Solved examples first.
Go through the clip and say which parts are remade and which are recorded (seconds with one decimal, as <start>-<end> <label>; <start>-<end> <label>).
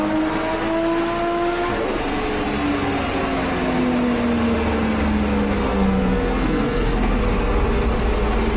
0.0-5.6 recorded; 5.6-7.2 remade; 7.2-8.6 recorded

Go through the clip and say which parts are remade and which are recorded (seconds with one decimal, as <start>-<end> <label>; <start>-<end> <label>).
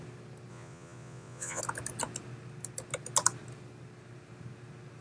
0.0-0.5 recorded; 0.5-1.6 remade; 1.6-5.0 recorded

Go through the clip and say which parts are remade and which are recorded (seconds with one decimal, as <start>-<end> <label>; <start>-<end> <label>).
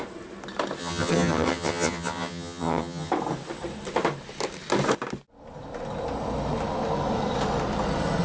0.0-0.8 recorded; 0.8-3.1 remade; 3.1-8.2 recorded